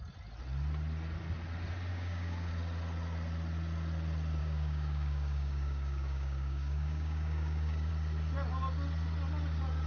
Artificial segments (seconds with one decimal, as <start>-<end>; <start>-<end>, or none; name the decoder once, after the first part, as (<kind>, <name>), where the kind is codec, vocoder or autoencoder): 1.9-2.5 (codec, DAC); 4.4-7.9